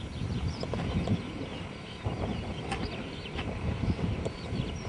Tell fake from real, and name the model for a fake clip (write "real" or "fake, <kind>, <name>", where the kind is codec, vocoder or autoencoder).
fake, vocoder, BigVGAN v2